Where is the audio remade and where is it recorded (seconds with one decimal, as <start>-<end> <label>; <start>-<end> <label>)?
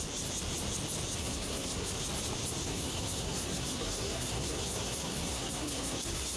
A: 0.0-1.2 recorded; 1.2-1.9 remade; 1.9-2.6 recorded; 2.6-6.4 remade